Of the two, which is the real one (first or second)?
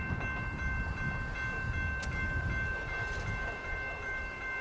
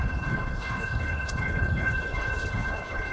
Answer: first